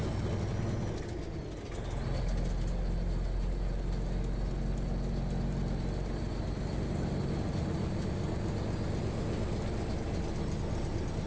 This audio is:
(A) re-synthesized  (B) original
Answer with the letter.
B